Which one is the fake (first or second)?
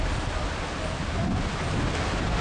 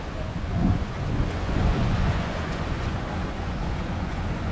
second